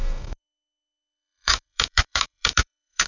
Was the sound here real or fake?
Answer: fake